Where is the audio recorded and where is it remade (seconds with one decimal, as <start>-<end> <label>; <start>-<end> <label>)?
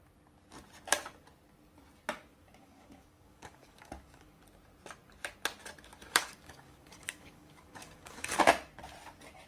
0.0-2.6 recorded; 2.6-4.4 remade; 4.4-6.1 recorded; 6.1-8.4 remade; 8.4-9.5 recorded